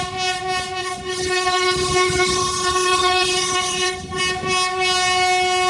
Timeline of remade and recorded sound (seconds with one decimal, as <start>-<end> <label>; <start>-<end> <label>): 0.0-0.8 recorded; 0.8-4.2 remade; 4.2-5.7 recorded

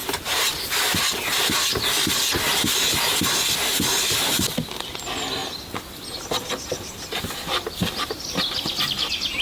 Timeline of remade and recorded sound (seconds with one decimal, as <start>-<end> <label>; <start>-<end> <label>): 0.0-9.4 recorded

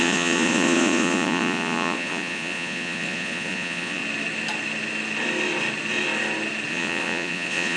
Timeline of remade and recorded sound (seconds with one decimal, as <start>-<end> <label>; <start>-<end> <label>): 0.0-4.0 remade; 4.0-6.7 recorded; 6.7-7.8 remade

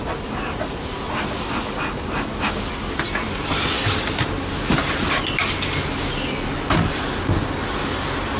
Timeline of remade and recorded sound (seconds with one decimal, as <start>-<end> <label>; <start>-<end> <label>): 0.0-8.4 recorded

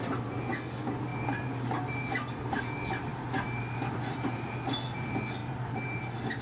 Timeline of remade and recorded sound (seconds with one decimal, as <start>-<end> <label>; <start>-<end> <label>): 0.0-1.1 recorded; 1.1-2.6 remade; 2.6-3.1 recorded; 3.1-3.9 remade; 3.9-5.4 recorded; 5.4-6.0 remade; 6.0-6.4 recorded

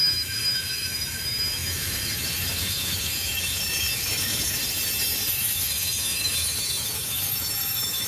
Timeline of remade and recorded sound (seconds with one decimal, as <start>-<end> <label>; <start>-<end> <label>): 0.0-4.6 remade; 4.6-5.3 recorded; 5.3-8.1 remade

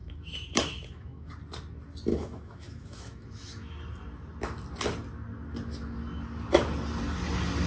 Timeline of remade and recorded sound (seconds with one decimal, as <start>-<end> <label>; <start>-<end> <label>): 0.0-1.3 remade; 1.3-2.1 recorded; 2.1-3.8 remade; 3.8-7.7 recorded

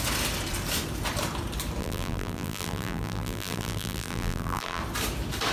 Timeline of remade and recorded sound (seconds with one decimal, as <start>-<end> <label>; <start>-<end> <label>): 0.0-1.8 recorded; 1.8-4.8 remade; 4.8-5.5 recorded